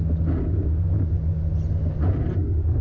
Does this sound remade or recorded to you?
recorded